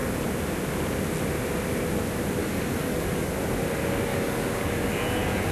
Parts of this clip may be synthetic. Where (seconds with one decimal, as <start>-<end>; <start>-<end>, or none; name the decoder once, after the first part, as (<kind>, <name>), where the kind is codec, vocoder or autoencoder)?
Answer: 2.4-3.3 (codec, DAC); 4.1-5.0